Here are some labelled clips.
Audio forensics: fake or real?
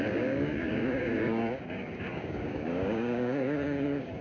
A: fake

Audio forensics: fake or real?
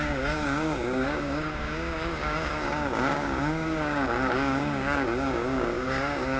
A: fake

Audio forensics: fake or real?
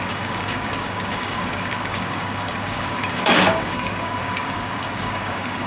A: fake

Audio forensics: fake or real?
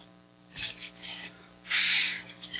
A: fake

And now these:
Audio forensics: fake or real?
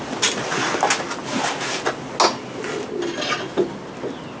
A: real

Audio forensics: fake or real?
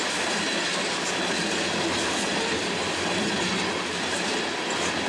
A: real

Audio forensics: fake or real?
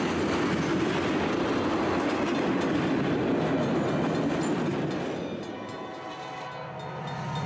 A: real